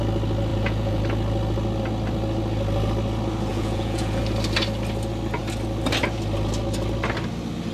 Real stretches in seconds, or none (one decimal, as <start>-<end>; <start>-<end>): 0.0-0.5; 1.0-3.5; 4.2-7.7